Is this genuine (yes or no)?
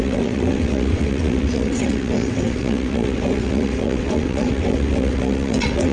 no